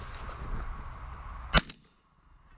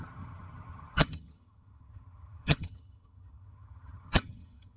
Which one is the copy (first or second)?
second